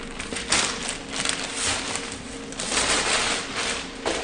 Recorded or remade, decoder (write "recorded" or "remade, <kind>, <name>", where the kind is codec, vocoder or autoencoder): recorded